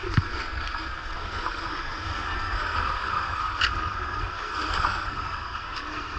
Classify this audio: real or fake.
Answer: fake